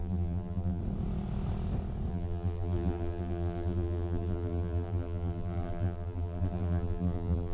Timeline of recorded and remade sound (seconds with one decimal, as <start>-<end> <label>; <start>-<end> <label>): 0.0-0.8 remade; 0.8-2.1 recorded; 2.1-7.5 remade